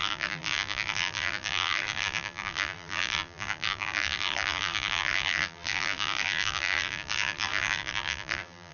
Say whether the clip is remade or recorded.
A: remade